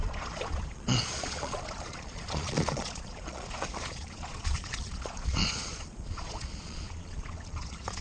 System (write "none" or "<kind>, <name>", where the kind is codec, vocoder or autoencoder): vocoder, Vocos